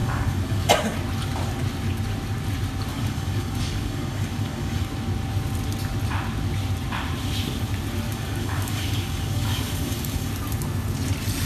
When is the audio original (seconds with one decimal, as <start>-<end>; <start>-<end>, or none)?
0.7-2.9; 4.9-8.1; 10.3-11.5